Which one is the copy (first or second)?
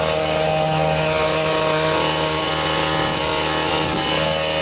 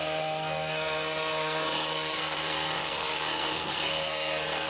second